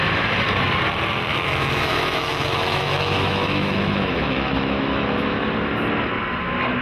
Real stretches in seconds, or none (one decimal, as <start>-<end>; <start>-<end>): 0.0-1.3; 5.4-6.8